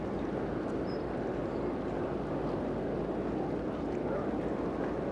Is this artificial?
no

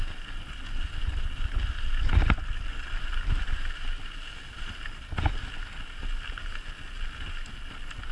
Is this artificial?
no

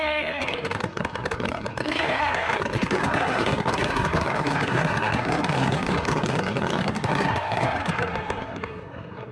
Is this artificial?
yes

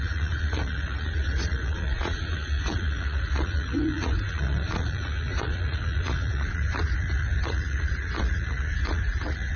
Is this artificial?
yes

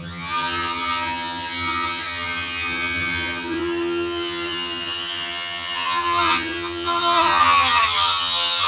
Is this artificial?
yes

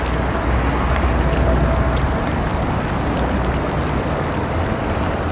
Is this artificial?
no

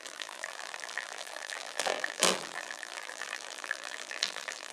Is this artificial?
yes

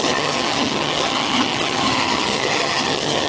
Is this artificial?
yes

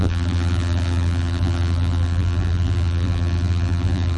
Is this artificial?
yes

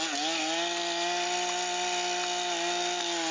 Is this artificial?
no